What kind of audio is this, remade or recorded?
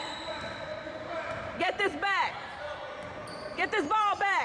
remade